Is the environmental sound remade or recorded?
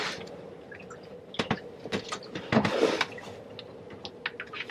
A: recorded